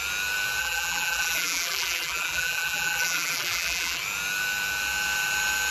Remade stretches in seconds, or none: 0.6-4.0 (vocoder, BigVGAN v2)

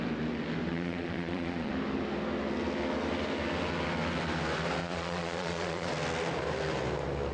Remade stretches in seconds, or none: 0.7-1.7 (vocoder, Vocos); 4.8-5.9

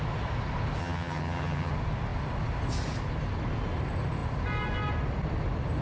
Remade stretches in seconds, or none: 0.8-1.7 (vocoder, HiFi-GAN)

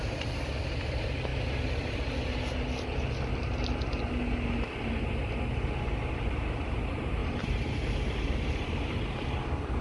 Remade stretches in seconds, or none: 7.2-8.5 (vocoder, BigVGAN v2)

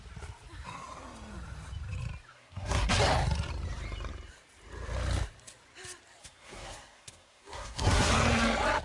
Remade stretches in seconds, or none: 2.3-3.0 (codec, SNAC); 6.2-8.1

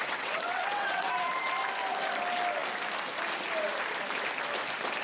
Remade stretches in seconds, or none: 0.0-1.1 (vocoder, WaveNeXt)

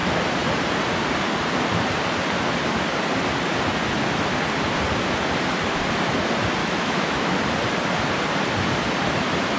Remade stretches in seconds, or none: 6.6-7.4 (autoencoder, DAC-VAE)